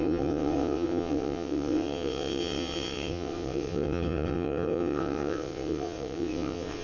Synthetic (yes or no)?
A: yes